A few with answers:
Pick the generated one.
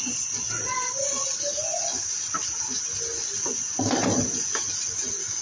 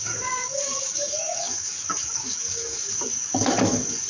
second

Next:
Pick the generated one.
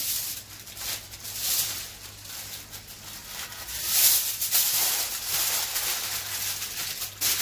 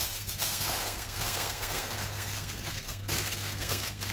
second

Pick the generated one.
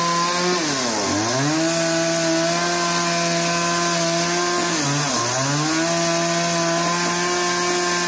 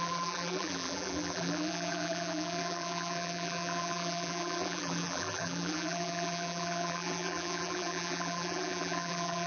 second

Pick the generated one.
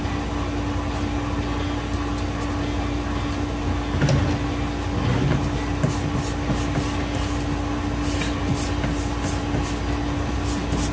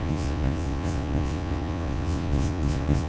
second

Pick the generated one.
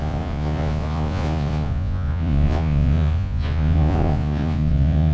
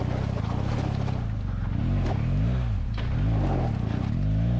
first